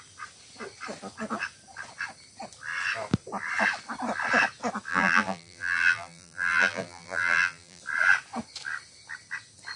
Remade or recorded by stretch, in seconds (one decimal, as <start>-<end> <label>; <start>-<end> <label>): 0.0-4.9 recorded; 4.9-7.8 remade; 7.8-9.8 recorded